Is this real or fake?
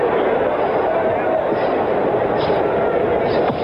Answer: real